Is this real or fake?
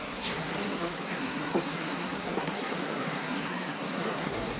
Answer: fake